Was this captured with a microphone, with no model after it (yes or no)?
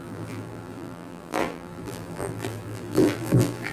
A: no